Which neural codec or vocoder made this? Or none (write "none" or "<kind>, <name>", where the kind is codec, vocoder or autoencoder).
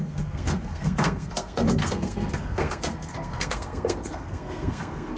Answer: codec, SNAC